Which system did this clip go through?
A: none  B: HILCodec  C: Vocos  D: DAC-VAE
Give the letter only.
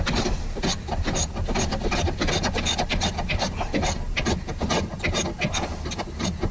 A